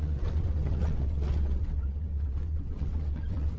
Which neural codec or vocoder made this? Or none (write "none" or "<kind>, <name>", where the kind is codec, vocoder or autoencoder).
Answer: vocoder, WaveNeXt